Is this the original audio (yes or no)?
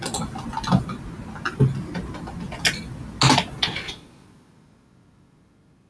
yes